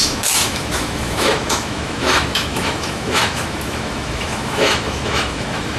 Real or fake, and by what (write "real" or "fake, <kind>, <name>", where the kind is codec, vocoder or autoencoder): fake, autoencoder, DAC-VAE